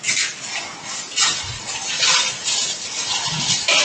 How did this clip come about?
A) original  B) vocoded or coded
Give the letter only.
A